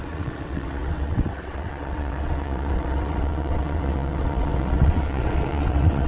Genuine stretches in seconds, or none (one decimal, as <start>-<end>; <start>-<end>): none